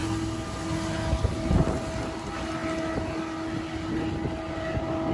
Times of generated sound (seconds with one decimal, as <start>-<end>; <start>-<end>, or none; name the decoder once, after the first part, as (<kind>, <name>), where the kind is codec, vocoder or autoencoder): none